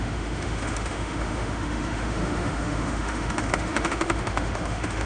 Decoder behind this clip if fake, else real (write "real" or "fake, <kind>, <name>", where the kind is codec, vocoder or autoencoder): fake, autoencoder, DAC-VAE